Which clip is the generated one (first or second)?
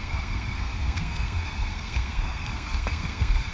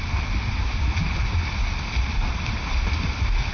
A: first